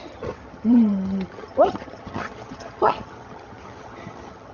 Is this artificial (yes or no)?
yes